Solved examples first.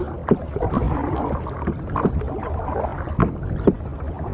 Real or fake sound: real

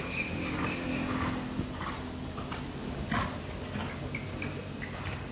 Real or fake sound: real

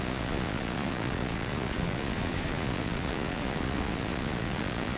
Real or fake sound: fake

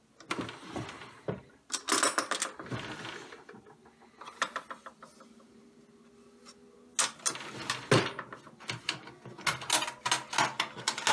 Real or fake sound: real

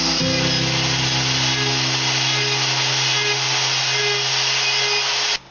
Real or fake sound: real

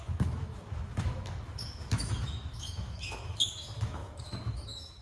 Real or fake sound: fake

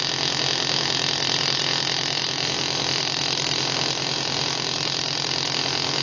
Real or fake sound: real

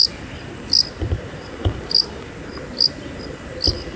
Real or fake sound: real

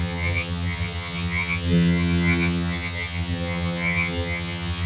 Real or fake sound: fake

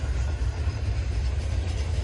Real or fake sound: real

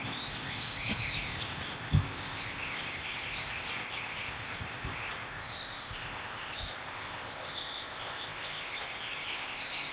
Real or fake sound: fake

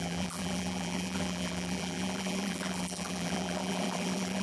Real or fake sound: fake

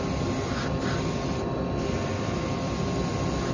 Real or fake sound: real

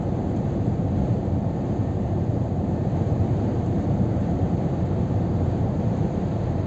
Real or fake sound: fake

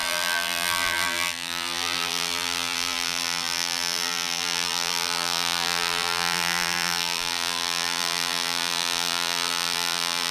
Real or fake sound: fake